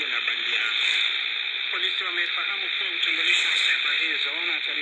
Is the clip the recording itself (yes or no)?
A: yes